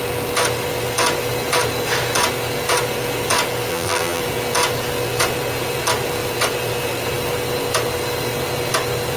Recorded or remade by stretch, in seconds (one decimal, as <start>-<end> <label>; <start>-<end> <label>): 0.0-3.7 recorded; 3.7-4.2 remade; 4.2-9.2 recorded